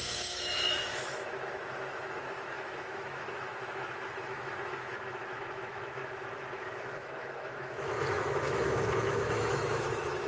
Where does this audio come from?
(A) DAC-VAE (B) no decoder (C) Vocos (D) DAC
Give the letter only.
A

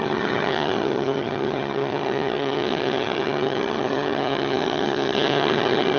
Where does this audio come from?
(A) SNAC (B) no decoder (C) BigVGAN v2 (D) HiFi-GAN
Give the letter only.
D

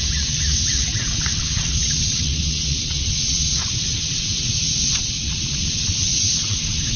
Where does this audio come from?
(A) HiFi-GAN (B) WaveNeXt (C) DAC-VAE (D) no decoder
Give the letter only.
B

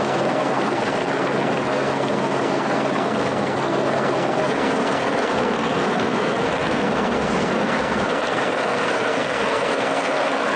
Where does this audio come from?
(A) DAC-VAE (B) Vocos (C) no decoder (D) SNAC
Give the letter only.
D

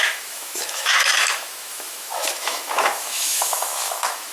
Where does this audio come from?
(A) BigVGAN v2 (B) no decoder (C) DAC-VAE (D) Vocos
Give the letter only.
C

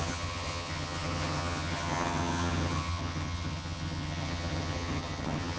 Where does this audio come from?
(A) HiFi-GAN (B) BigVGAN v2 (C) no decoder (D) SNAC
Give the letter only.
A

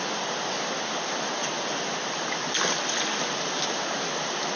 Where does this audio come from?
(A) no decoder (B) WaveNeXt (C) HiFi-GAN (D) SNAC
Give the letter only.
A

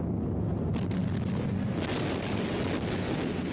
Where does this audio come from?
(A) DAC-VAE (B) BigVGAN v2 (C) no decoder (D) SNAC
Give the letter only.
C